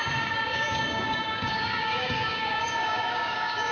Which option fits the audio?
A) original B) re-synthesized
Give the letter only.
B